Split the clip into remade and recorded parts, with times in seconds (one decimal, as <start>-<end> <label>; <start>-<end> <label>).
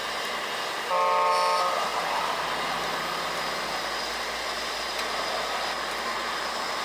0.0-6.8 recorded